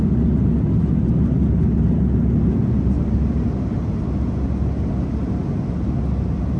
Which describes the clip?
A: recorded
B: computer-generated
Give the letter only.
A